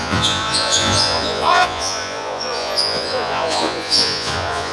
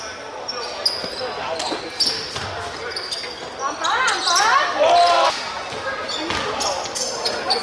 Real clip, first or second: second